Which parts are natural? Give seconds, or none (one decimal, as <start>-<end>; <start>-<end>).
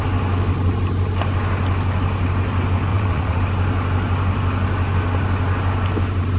0.0-2.9; 3.4-6.4